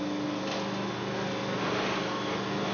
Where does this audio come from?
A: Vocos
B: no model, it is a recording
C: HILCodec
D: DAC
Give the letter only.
B